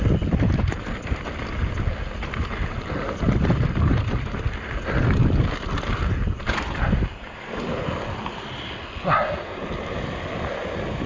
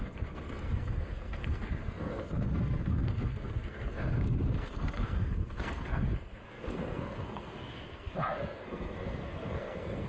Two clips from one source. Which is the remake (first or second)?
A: second